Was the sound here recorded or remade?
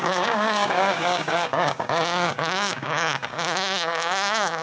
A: remade